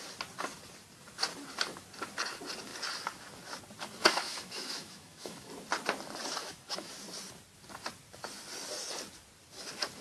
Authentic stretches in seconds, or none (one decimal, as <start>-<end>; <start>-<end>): 0.0-4.0; 5.5-6.4; 6.9-10.0